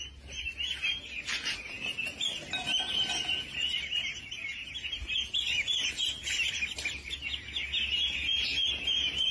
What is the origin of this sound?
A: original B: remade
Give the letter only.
A